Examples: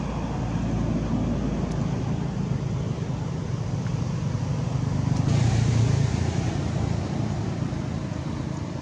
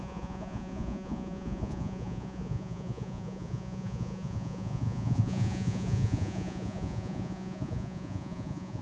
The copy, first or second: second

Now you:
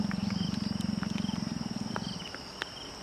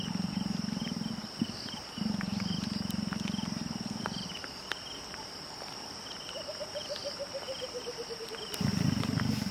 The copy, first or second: second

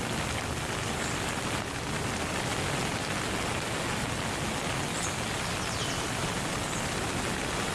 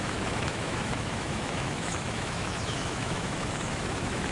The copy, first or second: second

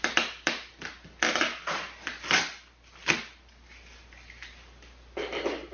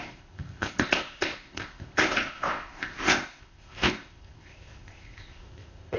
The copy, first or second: second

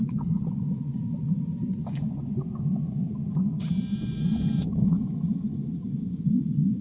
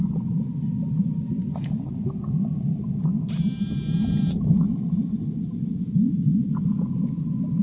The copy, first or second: first